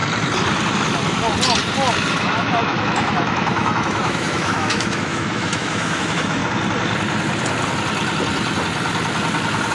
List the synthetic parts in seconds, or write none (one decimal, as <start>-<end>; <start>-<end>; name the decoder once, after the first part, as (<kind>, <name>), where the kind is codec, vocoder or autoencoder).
2.1-6.4 (autoencoder, DAC-VAE)